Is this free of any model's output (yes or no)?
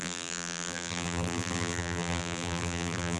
no